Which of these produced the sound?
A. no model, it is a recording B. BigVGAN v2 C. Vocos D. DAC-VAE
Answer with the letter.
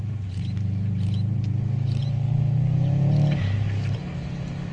A